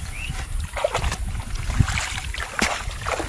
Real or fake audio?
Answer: real